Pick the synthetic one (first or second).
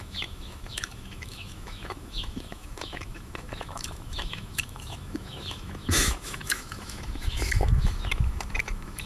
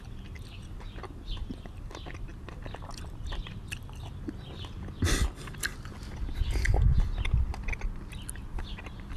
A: first